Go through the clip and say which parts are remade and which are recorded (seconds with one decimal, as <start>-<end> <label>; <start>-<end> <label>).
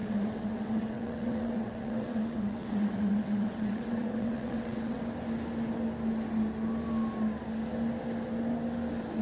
0.0-5.0 remade; 5.0-9.2 recorded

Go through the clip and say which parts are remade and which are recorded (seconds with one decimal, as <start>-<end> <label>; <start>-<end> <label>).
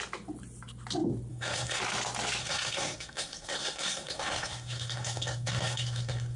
0.0-1.3 recorded; 1.3-1.8 remade; 1.8-2.4 recorded; 2.4-6.4 remade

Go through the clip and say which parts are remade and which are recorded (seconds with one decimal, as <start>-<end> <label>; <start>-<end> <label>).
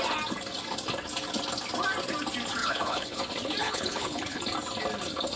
0.0-2.6 recorded; 2.6-3.2 remade; 3.2-3.6 recorded; 3.6-4.4 remade; 4.4-5.4 recorded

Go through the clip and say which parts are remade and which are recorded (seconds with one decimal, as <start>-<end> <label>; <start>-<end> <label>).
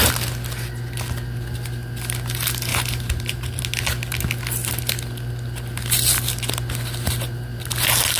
0.0-2.7 recorded; 2.7-3.6 remade; 3.6-8.2 recorded